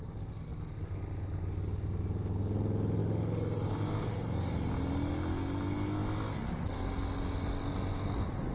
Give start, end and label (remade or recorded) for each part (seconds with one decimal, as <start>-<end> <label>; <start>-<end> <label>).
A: 0.0-8.5 recorded

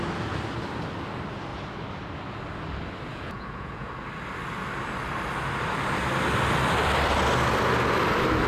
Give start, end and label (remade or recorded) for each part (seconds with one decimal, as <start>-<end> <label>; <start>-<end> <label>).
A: 0.0-3.1 recorded; 3.1-3.9 remade; 3.9-8.5 recorded

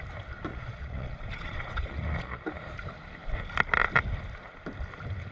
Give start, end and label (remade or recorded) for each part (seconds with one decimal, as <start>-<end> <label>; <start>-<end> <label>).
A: 0.0-0.5 recorded; 0.5-2.4 remade; 2.4-5.3 recorded

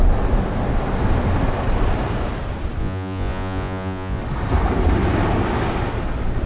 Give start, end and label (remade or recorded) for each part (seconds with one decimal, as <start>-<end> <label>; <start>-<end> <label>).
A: 0.0-2.8 recorded; 2.8-4.2 remade; 4.2-6.5 recorded

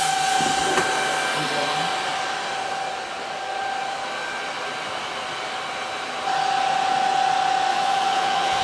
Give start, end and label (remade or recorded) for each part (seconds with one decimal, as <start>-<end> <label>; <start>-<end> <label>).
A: 0.0-7.7 recorded; 7.7-8.6 remade

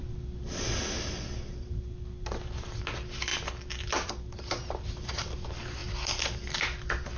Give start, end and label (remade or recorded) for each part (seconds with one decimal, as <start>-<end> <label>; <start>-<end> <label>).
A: 0.0-7.2 recorded